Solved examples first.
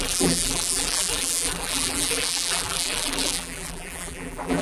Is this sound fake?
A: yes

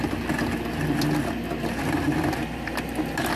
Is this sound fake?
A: no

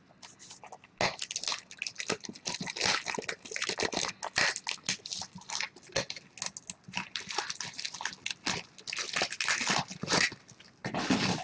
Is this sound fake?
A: no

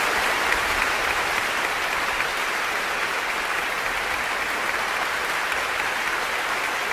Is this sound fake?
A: no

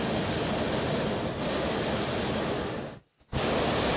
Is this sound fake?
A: no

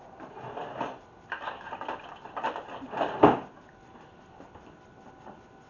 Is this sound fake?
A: yes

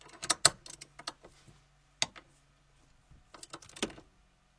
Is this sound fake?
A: no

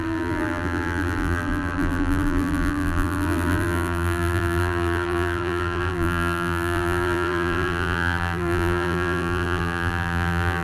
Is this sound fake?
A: yes